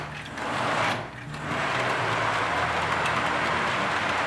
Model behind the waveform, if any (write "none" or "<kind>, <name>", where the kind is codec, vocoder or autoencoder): none